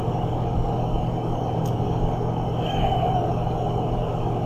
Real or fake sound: fake